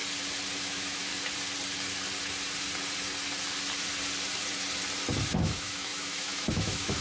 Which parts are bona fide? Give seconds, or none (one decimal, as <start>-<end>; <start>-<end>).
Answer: 0.0-0.6; 1.1-5.3